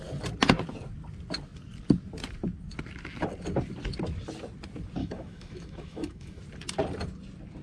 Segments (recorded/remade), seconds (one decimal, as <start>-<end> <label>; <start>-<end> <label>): 0.0-5.0 recorded; 5.0-6.4 remade; 6.4-7.6 recorded